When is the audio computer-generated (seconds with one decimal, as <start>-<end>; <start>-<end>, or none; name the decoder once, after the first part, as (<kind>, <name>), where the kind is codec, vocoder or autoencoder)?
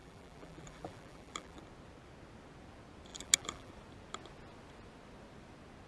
0.0-1.6 (vocoder, BigVGAN v2); 3.1-3.7